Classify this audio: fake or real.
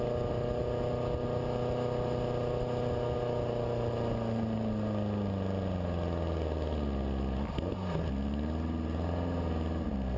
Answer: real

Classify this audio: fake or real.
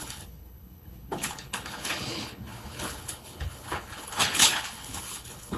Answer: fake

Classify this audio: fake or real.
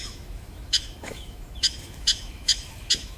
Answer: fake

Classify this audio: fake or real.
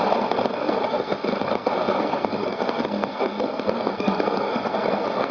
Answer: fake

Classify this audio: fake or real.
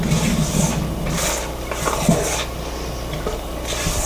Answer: real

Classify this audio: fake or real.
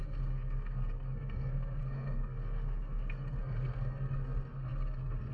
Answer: fake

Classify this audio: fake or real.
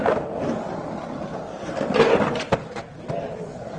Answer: real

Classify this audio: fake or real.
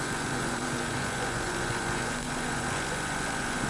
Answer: fake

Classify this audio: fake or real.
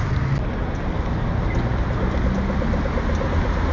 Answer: real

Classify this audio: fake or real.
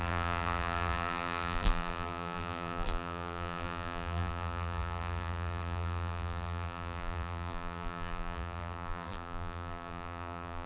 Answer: fake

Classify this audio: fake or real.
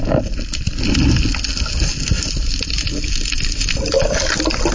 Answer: real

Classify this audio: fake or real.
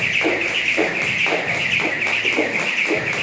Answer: fake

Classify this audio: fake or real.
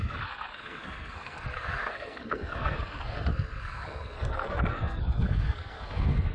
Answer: fake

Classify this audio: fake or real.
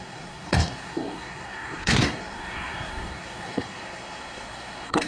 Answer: fake